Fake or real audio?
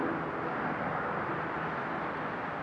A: real